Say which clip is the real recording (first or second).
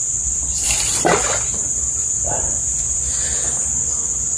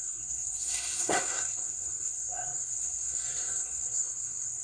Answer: first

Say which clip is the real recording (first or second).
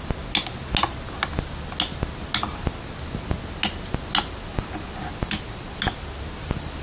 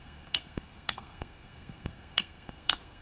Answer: first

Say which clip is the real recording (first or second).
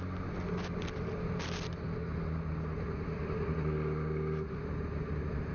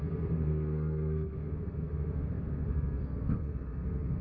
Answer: first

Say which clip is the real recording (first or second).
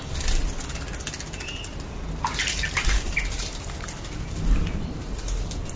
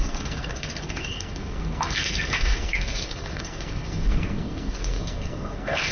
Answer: first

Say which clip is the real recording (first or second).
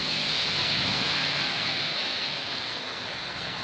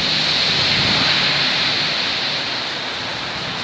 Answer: second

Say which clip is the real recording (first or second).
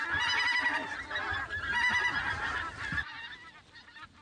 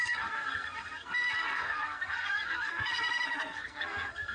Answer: first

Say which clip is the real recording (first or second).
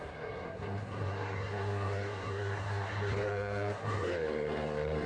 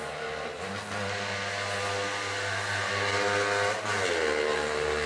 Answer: second